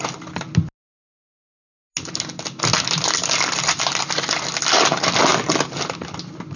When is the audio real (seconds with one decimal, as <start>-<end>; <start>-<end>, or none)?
0.0-6.6